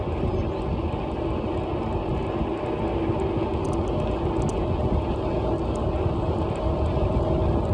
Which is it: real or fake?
real